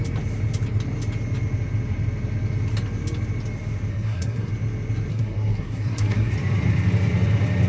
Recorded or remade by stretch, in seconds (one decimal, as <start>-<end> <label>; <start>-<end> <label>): 0.0-3.9 recorded; 3.9-4.5 remade; 4.5-5.1 recorded; 5.1-6.3 remade; 6.3-7.7 recorded